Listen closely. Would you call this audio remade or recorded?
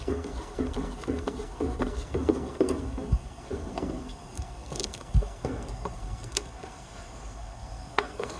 remade